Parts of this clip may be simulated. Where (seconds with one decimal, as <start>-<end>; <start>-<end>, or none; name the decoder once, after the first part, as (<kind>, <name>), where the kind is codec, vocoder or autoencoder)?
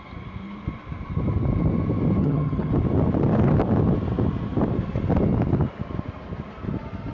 2.2-2.7 (vocoder, HiFi-GAN)